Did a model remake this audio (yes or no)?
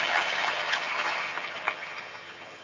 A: yes